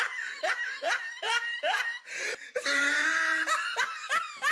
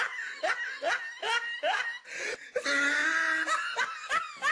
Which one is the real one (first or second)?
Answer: second